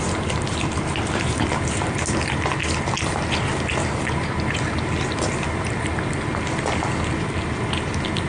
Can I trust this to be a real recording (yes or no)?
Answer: yes